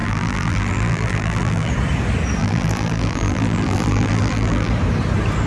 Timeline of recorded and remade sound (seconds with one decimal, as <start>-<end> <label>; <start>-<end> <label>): 0.0-1.7 remade; 1.7-2.4 recorded; 2.4-4.7 remade; 4.7-5.5 recorded